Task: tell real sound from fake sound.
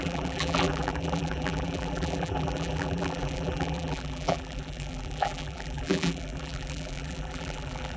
fake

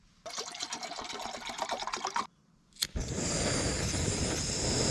real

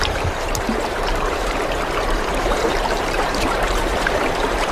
fake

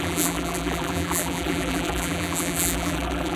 fake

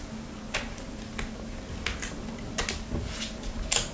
real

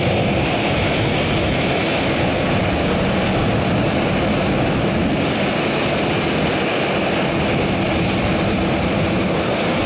real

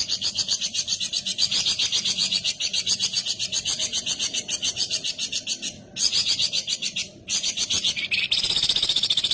real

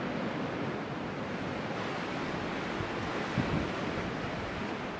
real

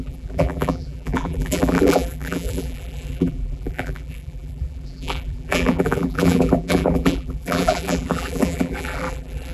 fake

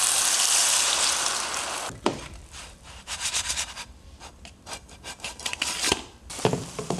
fake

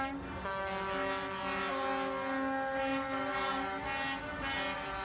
real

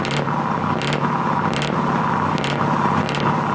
real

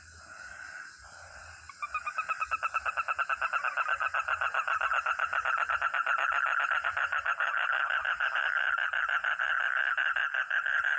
real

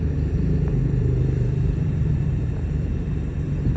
fake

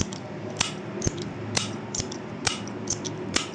fake